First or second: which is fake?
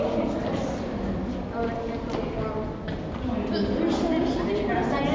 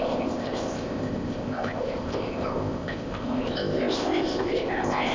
second